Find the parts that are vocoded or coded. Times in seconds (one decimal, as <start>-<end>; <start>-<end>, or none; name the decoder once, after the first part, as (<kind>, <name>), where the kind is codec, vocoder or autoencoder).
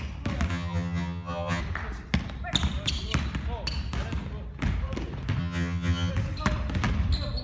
0.5-1.6 (vocoder, HiFi-GAN); 5.4-6.1